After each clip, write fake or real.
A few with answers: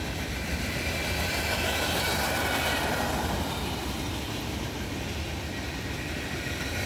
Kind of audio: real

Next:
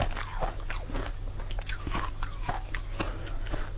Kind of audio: real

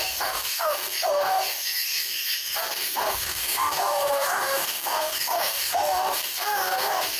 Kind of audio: fake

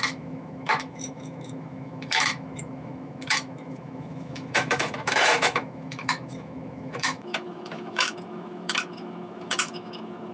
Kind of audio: fake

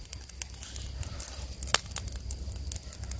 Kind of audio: real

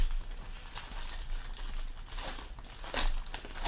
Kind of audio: real